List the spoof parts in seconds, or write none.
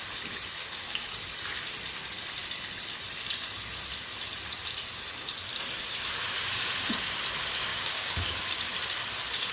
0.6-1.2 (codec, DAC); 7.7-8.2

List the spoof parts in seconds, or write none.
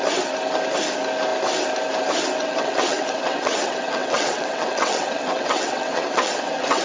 2.4-6.8 (vocoder, WaveNeXt)